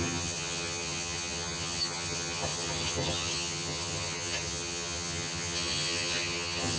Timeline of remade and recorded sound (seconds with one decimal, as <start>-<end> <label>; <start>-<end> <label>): 0.0-6.8 remade